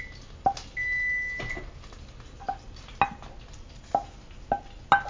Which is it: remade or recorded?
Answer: recorded